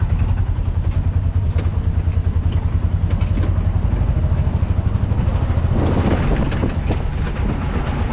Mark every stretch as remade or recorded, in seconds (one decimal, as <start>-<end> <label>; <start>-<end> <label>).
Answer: 0.0-8.1 recorded